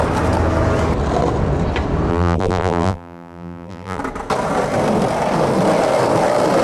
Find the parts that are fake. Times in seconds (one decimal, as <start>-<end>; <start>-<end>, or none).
2.1-4.0